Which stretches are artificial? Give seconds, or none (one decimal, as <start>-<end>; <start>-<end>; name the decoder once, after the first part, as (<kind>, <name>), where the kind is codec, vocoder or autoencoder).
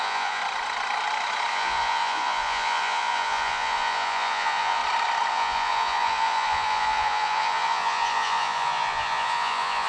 0.0-0.4 (vocoder, Vocos); 1.5-4.8; 5.3-9.9